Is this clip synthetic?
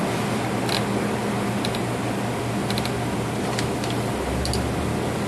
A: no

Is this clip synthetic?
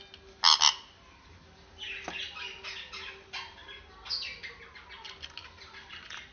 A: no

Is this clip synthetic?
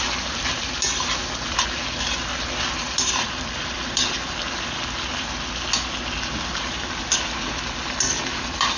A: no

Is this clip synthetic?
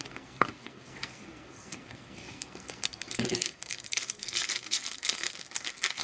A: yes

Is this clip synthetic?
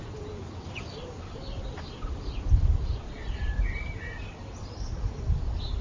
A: no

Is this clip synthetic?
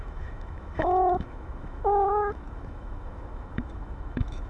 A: yes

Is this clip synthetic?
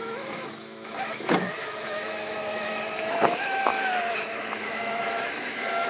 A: yes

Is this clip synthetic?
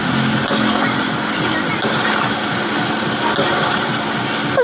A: no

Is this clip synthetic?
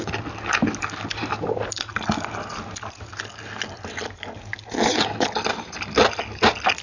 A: no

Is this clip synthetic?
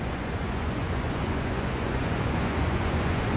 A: yes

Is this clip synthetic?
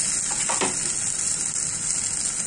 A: no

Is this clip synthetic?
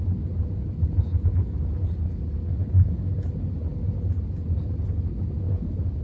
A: no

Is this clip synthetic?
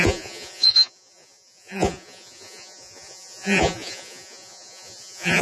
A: yes